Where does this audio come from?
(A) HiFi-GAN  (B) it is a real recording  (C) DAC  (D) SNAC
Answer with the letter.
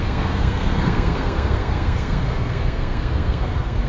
D